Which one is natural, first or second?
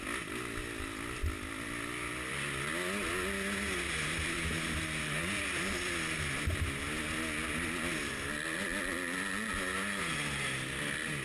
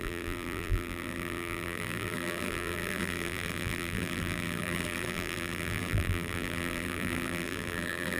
first